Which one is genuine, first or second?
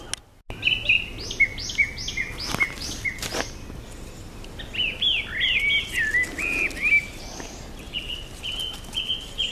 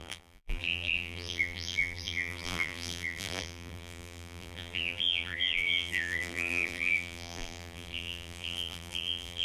first